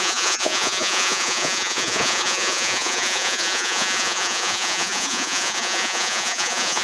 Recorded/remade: remade